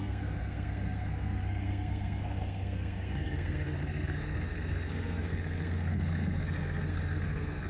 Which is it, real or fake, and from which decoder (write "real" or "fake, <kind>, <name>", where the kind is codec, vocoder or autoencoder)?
fake, codec, SNAC